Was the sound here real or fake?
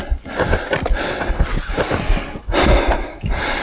real